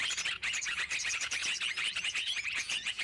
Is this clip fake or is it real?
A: fake